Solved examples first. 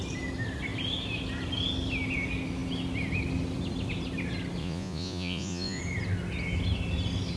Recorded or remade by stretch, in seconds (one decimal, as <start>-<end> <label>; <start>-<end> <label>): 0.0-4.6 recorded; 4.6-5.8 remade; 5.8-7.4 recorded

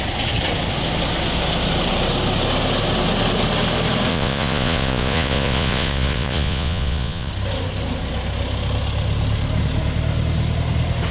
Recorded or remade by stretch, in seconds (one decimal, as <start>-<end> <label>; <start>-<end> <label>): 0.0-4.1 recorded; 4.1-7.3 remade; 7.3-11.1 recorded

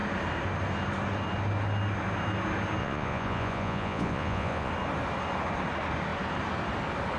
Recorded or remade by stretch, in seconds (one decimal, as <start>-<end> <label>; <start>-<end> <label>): 0.0-2.8 recorded; 2.8-4.7 remade; 4.7-7.2 recorded

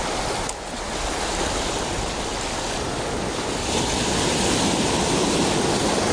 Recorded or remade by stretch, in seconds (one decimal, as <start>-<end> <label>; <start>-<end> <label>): 0.0-6.1 recorded

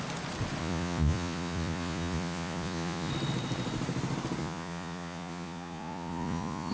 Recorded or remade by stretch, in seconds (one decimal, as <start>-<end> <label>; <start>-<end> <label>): 0.0-0.6 recorded; 0.6-3.1 remade; 3.1-4.4 recorded; 4.4-6.7 remade